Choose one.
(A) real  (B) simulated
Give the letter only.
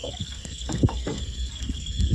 B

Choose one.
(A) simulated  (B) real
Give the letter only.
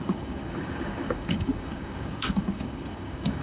A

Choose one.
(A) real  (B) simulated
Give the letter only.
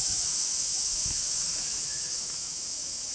B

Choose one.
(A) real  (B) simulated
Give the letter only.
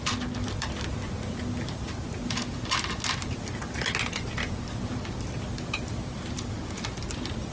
A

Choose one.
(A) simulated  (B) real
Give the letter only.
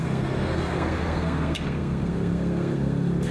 A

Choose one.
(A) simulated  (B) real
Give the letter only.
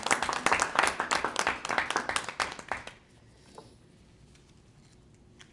B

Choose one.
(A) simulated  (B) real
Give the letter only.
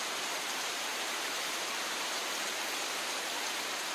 A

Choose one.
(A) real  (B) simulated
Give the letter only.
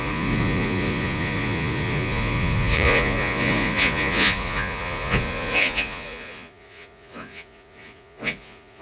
B